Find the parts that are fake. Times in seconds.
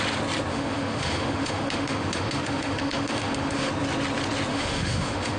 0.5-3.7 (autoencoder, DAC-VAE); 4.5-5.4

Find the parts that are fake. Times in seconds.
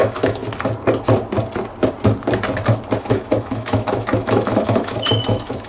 0.0-0.4 (autoencoder, DAC-VAE); 3.0-5.7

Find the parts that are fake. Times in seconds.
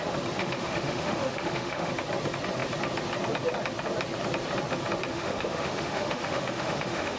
0.4-1.9 (autoencoder, DAC-VAE); 5.1-7.2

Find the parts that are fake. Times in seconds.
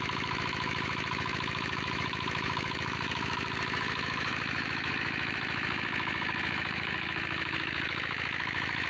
0.0-8.9 (autoencoder, DAC-VAE)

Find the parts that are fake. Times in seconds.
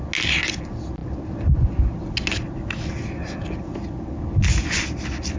none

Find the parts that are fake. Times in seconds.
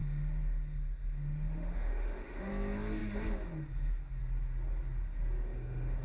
0.0-2.5 (autoencoder, DAC-VAE); 5.4-6.0